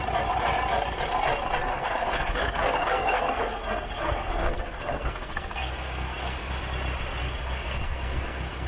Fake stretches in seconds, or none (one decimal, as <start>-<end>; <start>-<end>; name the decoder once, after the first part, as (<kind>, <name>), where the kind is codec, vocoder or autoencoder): 1.7-6.5 (codec, SNAC); 7.2-8.7